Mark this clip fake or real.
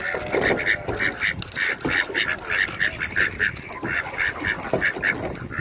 real